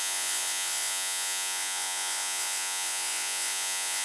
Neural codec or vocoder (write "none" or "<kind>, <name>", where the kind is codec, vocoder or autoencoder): vocoder, Vocos